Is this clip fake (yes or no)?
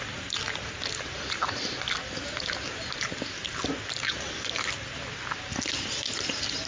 no